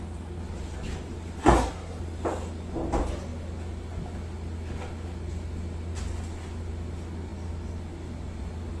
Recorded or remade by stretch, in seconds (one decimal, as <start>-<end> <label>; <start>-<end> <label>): 0.0-1.4 recorded; 1.4-2.0 remade; 2.0-8.8 recorded